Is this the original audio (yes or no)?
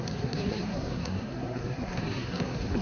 no